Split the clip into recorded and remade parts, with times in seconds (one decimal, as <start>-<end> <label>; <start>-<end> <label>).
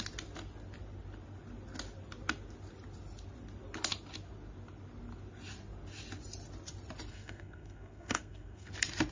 0.0-7.1 recorded; 7.1-8.7 remade; 8.7-9.1 recorded